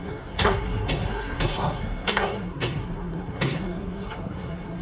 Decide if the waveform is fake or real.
fake